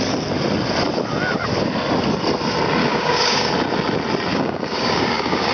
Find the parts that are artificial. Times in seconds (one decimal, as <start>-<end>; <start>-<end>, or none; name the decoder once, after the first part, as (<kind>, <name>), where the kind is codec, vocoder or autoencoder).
2.8-3.5 (codec, DAC); 4.3-5.5

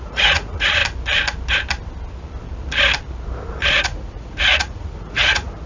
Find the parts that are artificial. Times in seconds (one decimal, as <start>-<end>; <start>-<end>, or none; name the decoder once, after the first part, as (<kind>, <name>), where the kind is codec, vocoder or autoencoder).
0.0-0.8 (vocoder, Vocos); 3.7-5.7

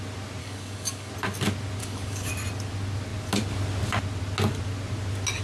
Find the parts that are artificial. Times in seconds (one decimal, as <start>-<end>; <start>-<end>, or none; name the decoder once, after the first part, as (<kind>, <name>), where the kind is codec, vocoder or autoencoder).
0.4-1.1 (codec, DAC); 1.8-2.3

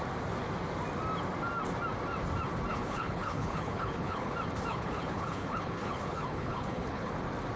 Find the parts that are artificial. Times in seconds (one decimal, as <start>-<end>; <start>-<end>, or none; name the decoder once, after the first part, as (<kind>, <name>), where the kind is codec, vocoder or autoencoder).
2.7-4.3 (codec, HILCodec); 4.7-7.1

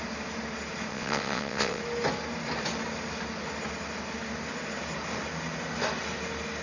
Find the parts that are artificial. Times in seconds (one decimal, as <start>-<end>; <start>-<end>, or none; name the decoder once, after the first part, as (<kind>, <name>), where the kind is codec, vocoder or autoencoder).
0.9-1.8 (vocoder, WaveNeXt)

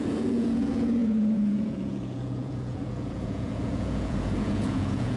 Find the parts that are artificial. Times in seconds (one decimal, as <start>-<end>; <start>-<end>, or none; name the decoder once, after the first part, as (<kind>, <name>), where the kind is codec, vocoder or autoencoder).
0.0-5.2 (vocoder, Vocos)

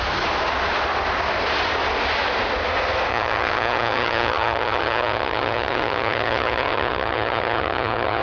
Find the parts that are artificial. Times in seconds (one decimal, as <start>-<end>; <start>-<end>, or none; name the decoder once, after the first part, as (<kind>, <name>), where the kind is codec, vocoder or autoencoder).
3.1-8.2 (vocoder, HiFi-GAN)